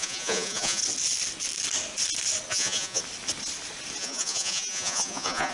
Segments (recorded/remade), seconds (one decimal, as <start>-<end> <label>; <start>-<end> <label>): 0.0-0.8 remade; 0.8-2.5 recorded; 2.5-3.0 remade; 3.0-4.0 recorded; 4.0-5.5 remade